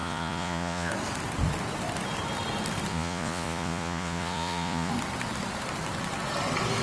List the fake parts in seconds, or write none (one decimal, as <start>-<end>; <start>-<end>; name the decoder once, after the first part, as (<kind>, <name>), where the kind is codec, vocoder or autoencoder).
0.0-0.9 (vocoder, Vocos); 2.9-4.9